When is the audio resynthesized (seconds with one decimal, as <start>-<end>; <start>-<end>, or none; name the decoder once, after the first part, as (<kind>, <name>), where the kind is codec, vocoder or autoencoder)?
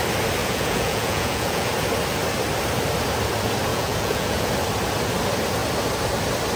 0.4-1.7 (vocoder, Vocos); 3.7-4.5